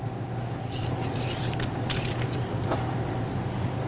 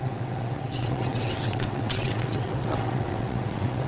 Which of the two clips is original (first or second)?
first